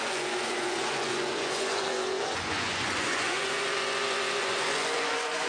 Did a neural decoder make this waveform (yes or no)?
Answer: yes